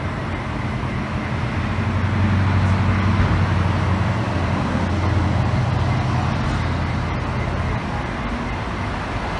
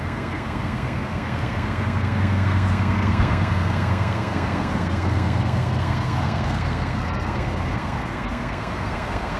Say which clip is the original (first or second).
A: first